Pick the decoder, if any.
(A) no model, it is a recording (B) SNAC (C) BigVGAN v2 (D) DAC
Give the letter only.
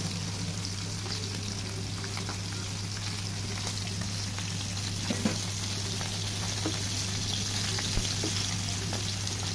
A